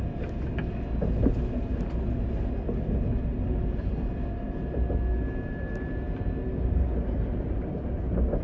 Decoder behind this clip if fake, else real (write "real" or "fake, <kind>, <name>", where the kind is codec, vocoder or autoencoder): real